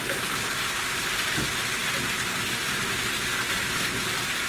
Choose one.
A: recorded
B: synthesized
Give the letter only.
A